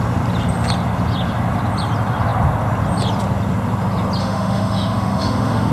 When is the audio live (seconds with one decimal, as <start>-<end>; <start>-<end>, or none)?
0.0-4.2